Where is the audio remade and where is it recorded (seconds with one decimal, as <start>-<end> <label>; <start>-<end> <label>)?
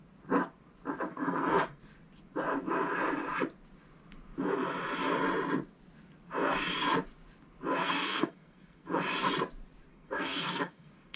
0.0-1.1 recorded; 1.1-1.8 remade; 1.8-7.8 recorded; 7.8-9.0 remade; 9.0-9.9 recorded; 9.9-11.2 remade